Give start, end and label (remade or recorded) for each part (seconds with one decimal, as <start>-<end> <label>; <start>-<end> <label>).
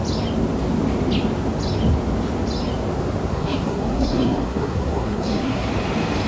0.0-3.3 recorded; 3.3-5.7 remade; 5.7-6.3 recorded